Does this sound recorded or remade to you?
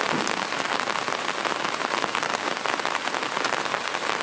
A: recorded